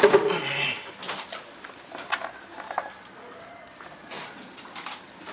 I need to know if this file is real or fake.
real